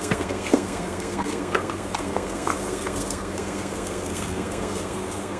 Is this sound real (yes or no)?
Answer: no